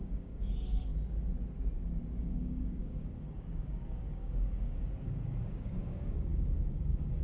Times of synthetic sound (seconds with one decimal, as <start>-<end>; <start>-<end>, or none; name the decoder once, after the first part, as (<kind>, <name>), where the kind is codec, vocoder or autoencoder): 0.0-0.9 (codec, DAC); 2.2-7.2